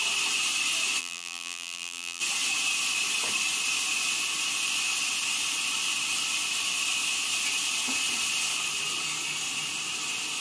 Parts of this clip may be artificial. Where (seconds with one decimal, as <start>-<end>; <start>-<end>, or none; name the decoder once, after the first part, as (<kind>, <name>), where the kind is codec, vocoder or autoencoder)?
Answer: 1.0-2.2 (vocoder, BigVGAN v2)